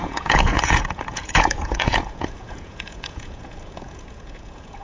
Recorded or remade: remade